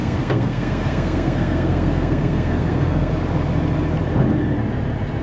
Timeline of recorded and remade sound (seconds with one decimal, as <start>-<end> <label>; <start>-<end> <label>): 0.0-3.1 remade; 3.1-5.2 recorded